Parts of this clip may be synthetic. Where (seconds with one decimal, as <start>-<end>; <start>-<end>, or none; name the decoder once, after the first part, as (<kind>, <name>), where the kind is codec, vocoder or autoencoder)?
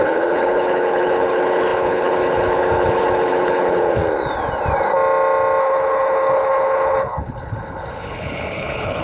0.0-4.0 (codec, HILCodec); 5.6-9.0